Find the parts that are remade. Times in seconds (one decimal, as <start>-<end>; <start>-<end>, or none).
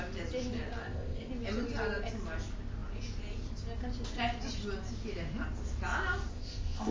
0.8-1.3; 6.3-6.9